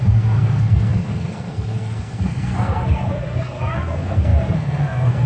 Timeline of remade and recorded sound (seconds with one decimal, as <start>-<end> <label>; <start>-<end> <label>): 0.0-5.3 remade